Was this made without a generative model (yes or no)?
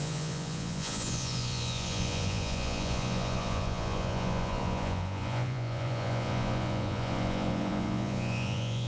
no